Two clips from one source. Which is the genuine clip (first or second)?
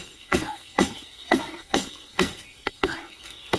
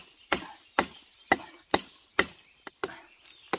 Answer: second